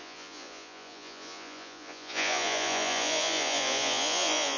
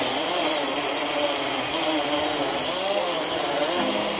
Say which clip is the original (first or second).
second